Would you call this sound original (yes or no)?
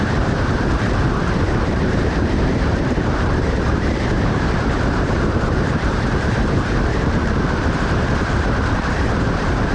no